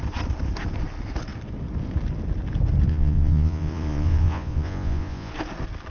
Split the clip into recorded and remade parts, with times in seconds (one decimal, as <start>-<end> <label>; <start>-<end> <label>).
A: 0.0-2.9 recorded; 2.9-5.3 remade; 5.3-5.9 recorded